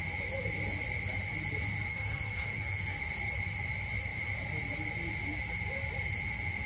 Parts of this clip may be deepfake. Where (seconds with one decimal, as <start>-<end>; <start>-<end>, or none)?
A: 1.9-3.0